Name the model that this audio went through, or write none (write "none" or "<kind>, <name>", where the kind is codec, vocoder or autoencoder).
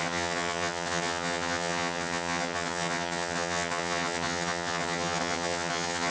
vocoder, HiFi-GAN